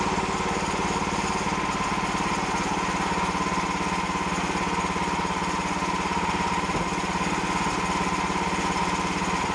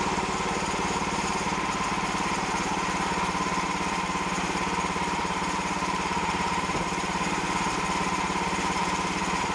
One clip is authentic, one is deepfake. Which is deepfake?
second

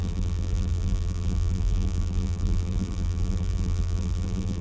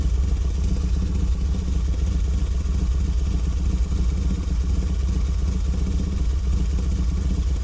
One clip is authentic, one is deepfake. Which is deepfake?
first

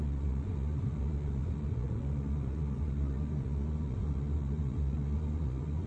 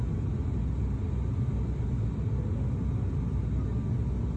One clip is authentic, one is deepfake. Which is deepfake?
first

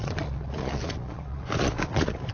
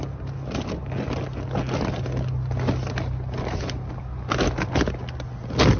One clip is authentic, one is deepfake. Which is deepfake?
first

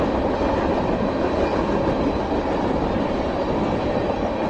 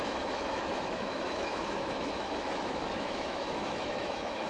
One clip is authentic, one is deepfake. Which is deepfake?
second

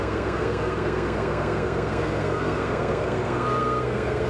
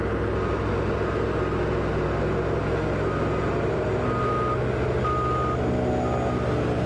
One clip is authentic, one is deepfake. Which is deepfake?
first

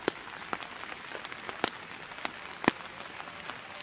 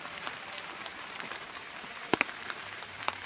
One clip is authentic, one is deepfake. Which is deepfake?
second